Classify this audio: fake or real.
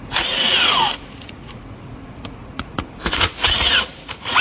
fake